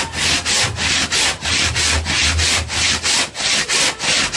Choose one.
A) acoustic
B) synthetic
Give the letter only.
A